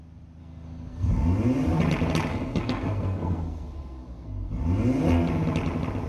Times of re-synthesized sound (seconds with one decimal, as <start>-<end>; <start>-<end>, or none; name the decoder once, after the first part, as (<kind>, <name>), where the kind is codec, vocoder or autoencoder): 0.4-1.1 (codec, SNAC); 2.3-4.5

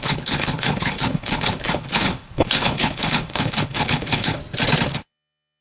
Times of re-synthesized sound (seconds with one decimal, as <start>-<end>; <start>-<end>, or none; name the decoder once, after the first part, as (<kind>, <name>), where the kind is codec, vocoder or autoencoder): 0.0-4.4 (codec, HILCodec); 4.9-5.6

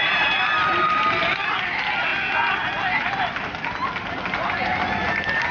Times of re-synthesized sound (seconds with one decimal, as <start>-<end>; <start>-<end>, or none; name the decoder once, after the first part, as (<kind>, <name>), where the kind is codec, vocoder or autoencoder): none

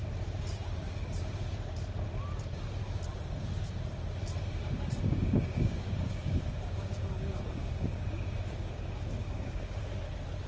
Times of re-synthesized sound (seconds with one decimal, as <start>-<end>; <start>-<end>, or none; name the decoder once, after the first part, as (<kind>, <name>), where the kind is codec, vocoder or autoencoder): 5.1-9.9 (codec, DAC)

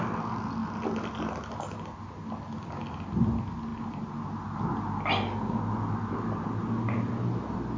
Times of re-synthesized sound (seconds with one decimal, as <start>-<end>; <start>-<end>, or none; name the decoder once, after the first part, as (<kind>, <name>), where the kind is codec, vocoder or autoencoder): none

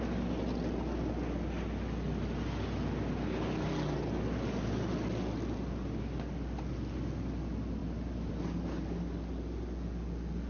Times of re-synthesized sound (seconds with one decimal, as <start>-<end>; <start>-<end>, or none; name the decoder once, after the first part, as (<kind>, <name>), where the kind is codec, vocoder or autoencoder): none